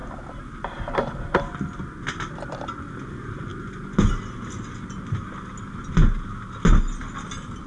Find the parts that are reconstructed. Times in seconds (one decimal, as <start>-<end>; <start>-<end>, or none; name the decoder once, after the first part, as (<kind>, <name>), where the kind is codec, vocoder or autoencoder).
0.0-1.5 (vocoder, BigVGAN v2)